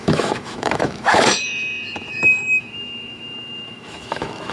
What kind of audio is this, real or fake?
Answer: fake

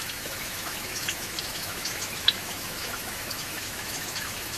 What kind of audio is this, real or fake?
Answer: fake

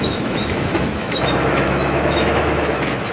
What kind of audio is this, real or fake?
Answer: fake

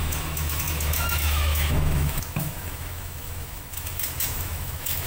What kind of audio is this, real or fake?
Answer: fake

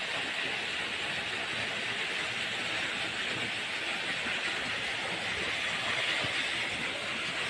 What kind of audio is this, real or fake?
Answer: real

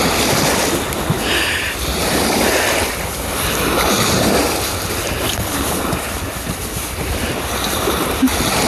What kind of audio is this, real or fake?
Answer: real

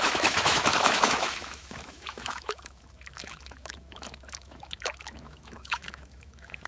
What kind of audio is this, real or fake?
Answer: fake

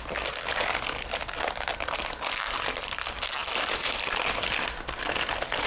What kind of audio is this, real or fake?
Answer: real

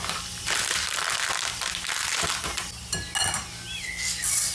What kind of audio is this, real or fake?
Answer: real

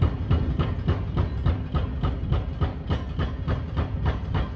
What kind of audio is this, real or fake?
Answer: real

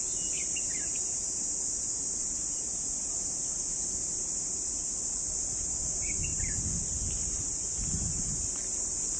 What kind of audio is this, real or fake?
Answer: real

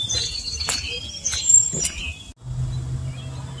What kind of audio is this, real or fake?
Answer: real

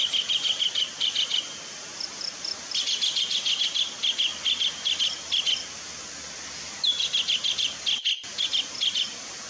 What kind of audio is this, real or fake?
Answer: real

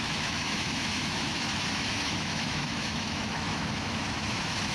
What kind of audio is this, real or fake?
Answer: fake